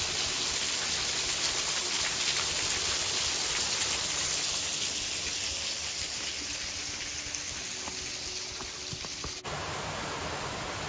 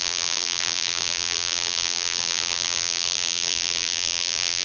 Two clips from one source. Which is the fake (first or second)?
second